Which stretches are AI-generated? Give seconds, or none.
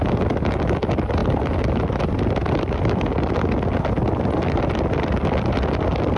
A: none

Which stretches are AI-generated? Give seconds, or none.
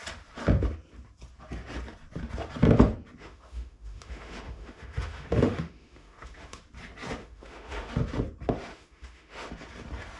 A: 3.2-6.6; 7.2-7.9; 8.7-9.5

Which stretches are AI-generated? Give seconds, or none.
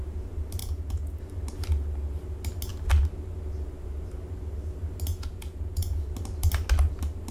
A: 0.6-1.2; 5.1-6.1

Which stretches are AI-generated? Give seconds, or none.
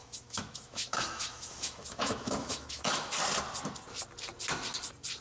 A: 0.0-3.1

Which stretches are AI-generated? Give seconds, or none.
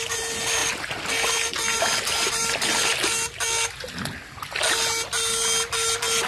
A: none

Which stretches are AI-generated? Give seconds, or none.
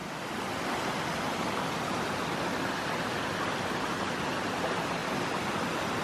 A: none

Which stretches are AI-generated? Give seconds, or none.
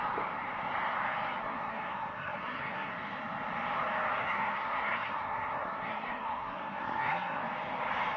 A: 1.4-2.9; 4.2-7.4